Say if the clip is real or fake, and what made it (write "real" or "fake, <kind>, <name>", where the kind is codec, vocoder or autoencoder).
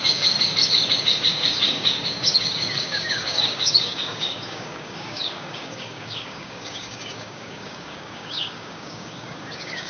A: fake, codec, DAC